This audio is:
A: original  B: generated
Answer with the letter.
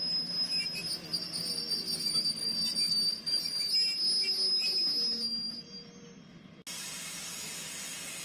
A